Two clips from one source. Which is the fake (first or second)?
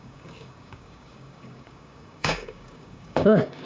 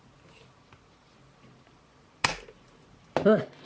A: first